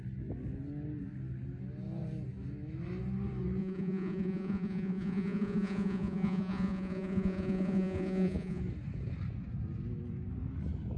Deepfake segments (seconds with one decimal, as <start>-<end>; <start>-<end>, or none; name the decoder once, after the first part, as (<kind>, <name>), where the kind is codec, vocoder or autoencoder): 3.6-8.6 (vocoder, Vocos)

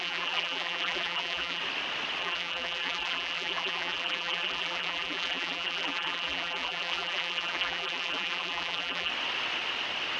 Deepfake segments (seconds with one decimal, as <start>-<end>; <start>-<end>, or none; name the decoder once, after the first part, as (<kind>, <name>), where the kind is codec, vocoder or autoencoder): 0.0-1.6 (vocoder, BigVGAN v2); 2.2-9.1

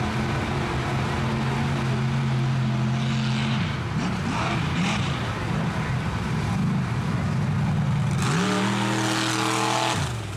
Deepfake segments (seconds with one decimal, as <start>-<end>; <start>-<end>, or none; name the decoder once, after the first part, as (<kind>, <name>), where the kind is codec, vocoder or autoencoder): 3.4-5.3 (vocoder, BigVGAN v2)

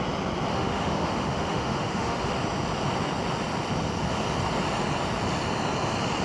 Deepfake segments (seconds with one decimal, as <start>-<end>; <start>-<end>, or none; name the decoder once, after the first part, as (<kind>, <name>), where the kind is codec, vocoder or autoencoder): 0.5-2.3 (autoencoder, DAC-VAE)